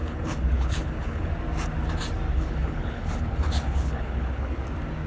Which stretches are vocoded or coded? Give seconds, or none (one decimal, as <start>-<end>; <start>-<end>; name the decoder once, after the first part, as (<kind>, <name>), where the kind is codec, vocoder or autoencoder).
0.0-1.3 (codec, HILCodec); 2.3-4.6